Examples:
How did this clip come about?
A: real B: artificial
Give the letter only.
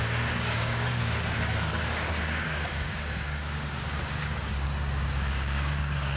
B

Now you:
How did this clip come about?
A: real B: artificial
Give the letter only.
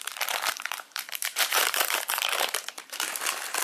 B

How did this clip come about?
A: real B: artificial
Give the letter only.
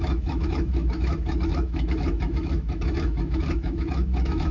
B